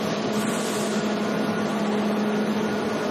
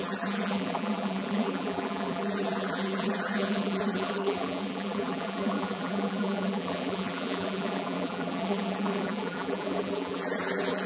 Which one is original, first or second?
first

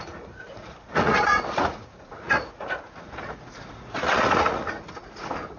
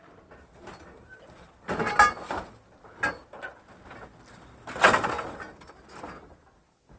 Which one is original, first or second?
second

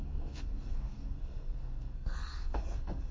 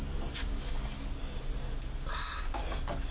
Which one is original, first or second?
second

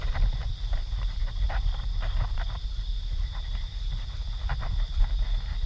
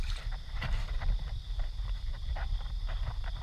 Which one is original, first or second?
first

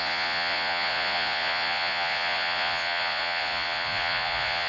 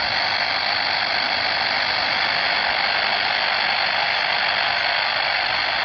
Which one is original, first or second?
second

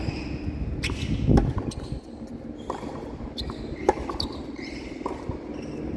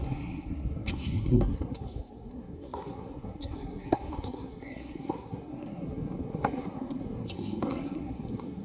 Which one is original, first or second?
first